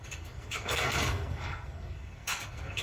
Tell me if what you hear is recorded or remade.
remade